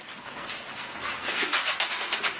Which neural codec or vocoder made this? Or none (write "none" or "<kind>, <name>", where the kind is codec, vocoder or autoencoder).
codec, SNAC